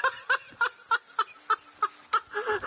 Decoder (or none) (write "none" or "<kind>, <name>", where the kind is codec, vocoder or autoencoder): none